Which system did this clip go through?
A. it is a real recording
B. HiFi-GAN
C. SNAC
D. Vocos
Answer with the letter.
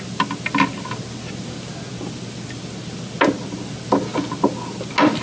A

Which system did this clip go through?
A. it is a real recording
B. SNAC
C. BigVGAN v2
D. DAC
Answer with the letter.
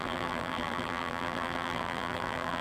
C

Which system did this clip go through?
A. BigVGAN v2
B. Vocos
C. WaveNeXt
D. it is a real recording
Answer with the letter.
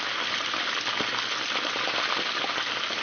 D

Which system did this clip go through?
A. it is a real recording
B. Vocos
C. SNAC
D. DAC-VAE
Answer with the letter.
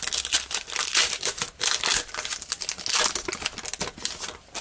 A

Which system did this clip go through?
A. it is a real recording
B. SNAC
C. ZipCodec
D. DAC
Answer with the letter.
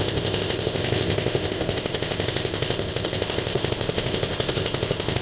C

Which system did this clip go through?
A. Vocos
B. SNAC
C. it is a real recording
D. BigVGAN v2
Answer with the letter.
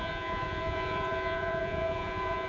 A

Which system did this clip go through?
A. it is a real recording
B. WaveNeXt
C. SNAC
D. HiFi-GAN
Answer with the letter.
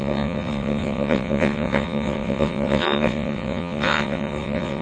B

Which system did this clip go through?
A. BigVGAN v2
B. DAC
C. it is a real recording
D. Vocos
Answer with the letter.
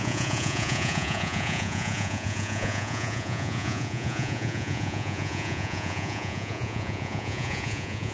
D